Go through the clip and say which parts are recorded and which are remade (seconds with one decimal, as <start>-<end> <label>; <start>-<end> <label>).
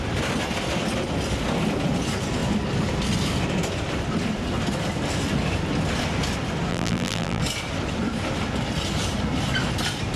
0.0-6.7 recorded; 6.7-7.4 remade; 7.4-10.2 recorded